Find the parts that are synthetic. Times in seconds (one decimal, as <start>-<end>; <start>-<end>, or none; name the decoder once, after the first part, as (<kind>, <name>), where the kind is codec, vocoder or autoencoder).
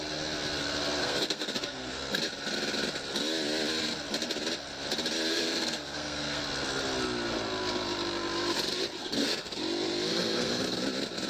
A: 1.0-2.2 (codec, SNAC); 5.3-6.4; 9.0-9.6; 10.1-10.8